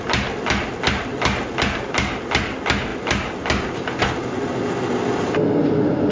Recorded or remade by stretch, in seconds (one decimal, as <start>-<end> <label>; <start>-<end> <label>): 0.0-6.1 recorded